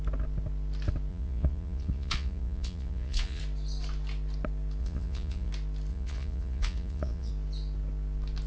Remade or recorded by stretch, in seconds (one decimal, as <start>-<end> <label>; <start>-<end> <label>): 0.0-1.1 recorded; 1.1-3.4 remade; 3.4-4.8 recorded; 4.8-5.5 remade; 5.5-5.9 recorded; 5.9-7.3 remade; 7.3-8.5 recorded